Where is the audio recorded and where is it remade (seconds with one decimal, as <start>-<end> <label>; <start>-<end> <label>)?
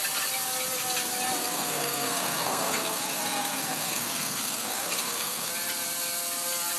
0.0-1.4 recorded; 1.4-5.5 remade; 5.5-6.8 recorded